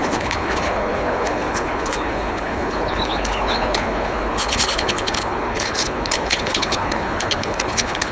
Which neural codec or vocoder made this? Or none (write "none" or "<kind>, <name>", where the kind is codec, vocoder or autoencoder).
codec, HILCodec